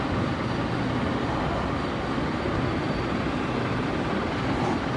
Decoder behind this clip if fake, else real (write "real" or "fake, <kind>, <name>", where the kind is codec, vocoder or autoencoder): real